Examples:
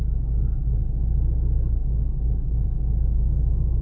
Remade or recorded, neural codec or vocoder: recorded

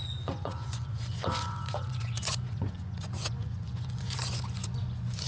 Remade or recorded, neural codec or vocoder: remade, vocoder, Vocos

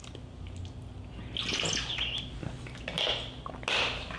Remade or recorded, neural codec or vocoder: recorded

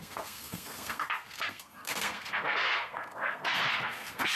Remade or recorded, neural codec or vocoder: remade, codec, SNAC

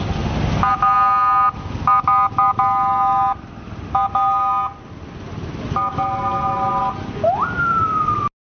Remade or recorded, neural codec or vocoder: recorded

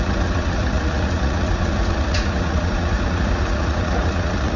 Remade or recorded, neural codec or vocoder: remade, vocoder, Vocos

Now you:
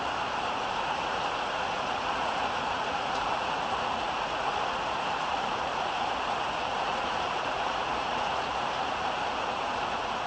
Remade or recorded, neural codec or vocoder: remade, vocoder, Vocos